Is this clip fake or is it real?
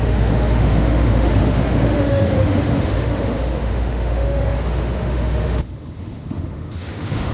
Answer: fake